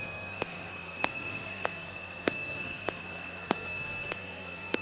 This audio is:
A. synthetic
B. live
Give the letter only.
A